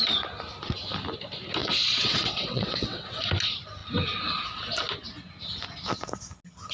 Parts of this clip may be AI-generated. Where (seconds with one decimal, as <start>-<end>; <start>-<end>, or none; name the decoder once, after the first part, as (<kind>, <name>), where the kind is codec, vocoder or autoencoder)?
1.6-3.2 (vocoder, WaveNeXt)